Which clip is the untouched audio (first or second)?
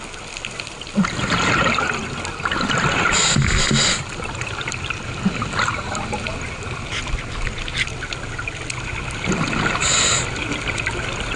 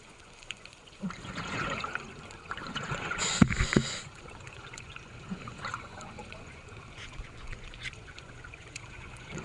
first